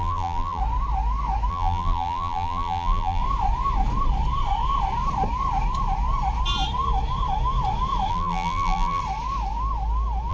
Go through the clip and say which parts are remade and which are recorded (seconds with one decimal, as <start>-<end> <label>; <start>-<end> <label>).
0.0-0.6 remade; 0.6-1.5 recorded; 1.5-3.2 remade; 3.2-8.1 recorded; 8.1-9.0 remade; 9.0-10.3 recorded